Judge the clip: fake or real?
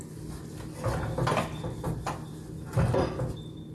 real